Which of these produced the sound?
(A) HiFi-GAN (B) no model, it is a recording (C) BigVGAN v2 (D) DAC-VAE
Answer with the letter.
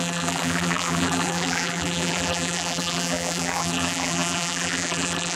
C